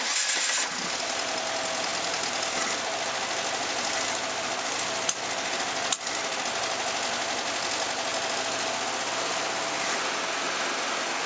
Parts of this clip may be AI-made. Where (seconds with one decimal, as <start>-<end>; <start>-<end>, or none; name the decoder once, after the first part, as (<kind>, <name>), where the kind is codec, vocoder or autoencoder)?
none